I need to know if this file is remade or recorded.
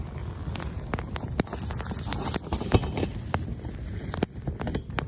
recorded